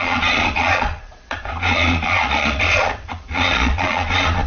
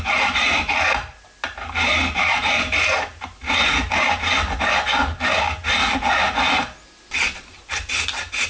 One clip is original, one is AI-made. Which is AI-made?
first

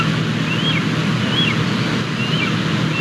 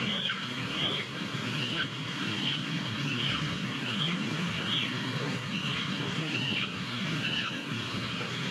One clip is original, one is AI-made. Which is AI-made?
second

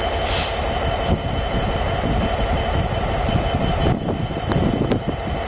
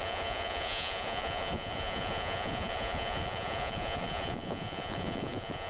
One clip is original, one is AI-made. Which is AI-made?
second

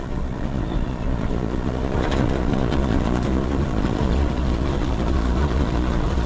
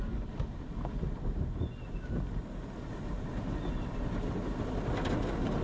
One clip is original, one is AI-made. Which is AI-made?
first